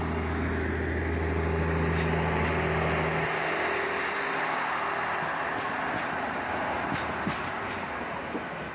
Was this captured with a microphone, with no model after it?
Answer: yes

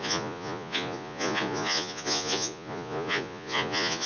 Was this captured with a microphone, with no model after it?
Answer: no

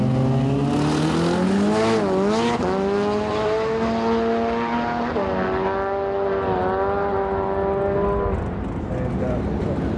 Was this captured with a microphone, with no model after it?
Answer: yes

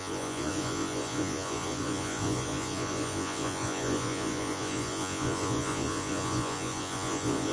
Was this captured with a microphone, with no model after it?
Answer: no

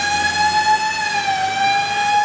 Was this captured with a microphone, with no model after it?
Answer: yes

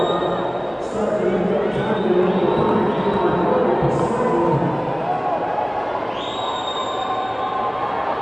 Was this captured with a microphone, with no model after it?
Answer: yes